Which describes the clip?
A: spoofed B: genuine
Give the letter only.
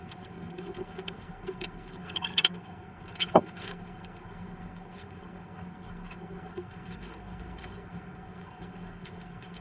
A